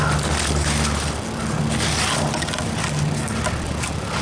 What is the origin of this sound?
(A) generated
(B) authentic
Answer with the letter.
B